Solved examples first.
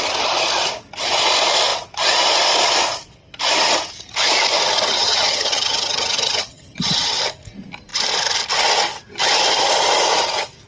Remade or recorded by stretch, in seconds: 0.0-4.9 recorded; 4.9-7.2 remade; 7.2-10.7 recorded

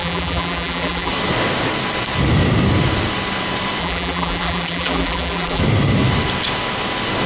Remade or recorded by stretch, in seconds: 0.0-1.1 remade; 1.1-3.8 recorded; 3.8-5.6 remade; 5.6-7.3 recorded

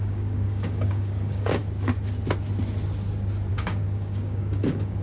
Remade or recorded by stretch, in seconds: 0.0-1.6 remade; 1.6-3.5 recorded; 3.5-5.0 remade